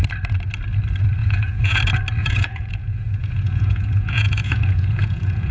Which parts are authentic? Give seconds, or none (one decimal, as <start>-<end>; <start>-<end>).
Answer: 0.0-1.2; 1.8-2.2